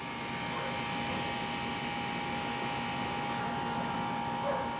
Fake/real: real